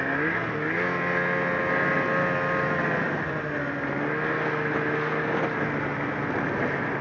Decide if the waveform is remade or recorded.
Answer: recorded